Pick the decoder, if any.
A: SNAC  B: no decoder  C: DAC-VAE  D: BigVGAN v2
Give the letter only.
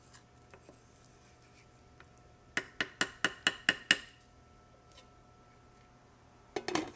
B